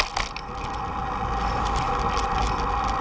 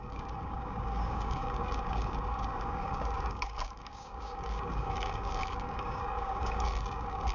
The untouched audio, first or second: first